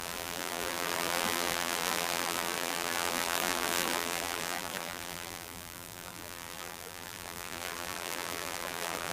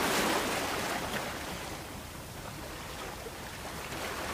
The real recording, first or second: second